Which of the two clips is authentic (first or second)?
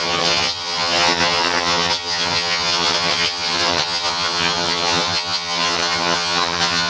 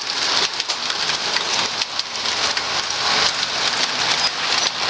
second